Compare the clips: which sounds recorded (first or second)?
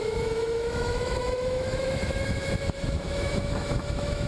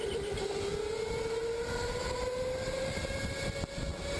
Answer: second